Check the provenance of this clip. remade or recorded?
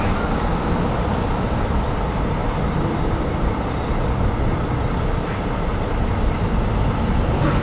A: recorded